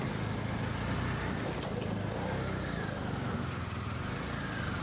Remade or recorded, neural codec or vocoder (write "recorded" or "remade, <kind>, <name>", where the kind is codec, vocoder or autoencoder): recorded